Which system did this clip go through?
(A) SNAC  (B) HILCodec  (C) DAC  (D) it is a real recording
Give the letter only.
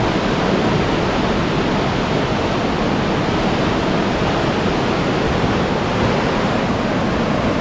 D